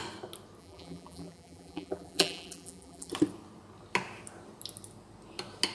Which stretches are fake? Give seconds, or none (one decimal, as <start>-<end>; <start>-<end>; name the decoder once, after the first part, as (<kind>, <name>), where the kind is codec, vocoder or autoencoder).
0.6-3.1 (vocoder, BigVGAN v2)